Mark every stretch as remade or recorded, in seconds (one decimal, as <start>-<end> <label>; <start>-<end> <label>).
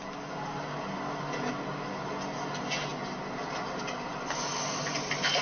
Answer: 0.0-5.4 recorded